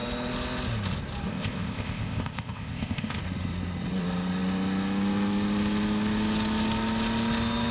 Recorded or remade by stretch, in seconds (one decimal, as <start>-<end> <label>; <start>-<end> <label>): 0.0-1.3 recorded; 1.3-3.2 remade; 3.2-7.7 recorded